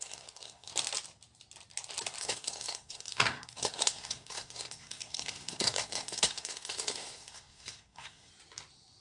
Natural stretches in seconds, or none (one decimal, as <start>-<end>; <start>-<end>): 0.7-2.2; 8.3-9.0